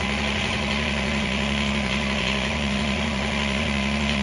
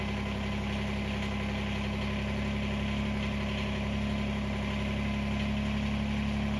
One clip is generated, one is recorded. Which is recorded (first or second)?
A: second